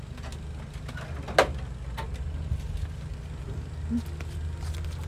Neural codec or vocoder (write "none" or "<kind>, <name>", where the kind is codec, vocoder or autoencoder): none